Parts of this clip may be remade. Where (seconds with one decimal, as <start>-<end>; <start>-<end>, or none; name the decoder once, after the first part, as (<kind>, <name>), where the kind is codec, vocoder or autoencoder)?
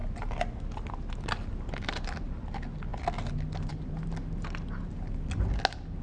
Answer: none